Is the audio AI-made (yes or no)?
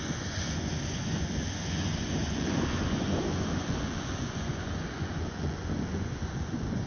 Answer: yes